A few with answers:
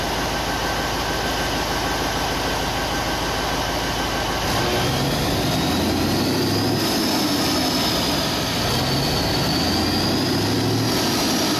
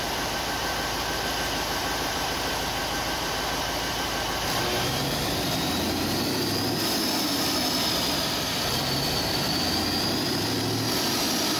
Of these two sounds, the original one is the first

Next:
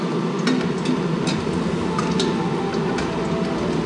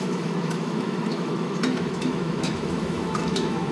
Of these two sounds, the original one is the first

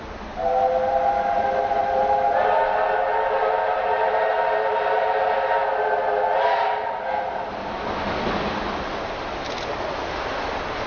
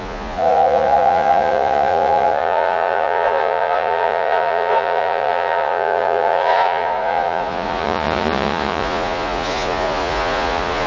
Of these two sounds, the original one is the first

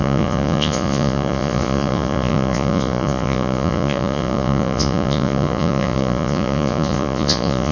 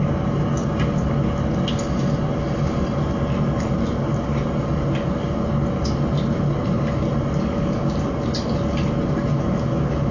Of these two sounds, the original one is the second